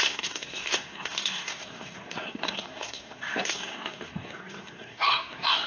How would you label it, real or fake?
fake